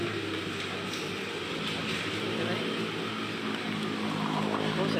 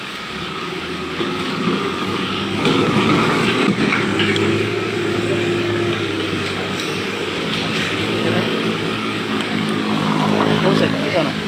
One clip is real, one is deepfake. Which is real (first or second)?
first